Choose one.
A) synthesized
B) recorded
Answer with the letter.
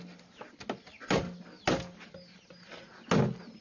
B